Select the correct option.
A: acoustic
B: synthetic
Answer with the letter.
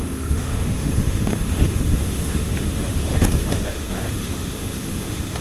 B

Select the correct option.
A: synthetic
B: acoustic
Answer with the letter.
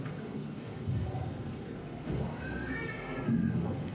A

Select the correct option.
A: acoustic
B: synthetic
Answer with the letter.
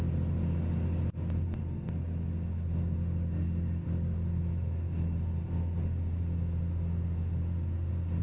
A